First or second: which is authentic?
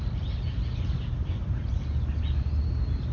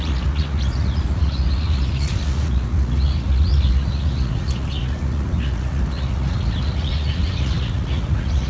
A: first